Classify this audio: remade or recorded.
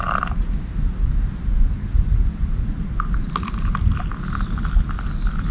recorded